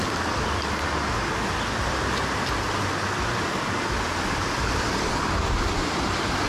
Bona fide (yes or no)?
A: yes